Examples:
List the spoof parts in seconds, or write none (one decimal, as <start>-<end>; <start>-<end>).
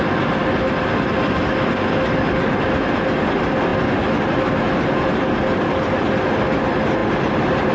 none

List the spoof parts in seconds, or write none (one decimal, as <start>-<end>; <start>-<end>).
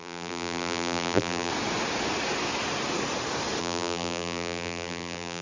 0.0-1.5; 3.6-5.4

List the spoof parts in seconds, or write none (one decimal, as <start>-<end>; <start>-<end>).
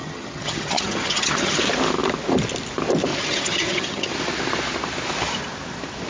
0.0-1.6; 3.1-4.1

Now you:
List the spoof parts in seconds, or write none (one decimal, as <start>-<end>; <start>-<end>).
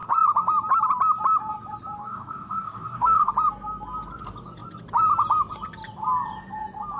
2.0-3.3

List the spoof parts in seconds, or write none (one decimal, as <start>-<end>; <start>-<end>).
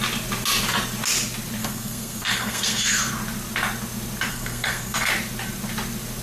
1.6-3.1; 4.3-5.1